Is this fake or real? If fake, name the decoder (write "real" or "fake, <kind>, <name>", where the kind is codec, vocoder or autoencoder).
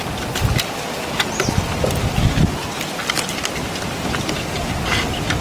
real